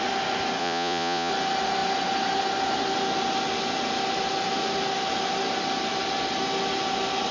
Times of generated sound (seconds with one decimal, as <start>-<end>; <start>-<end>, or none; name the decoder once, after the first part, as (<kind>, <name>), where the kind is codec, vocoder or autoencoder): 0.6-1.3 (vocoder, Vocos)